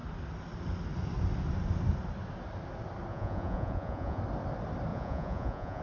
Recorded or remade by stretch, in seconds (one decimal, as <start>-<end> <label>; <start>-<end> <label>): 0.0-3.1 recorded; 3.1-4.2 remade; 4.2-4.9 recorded; 4.9-5.8 remade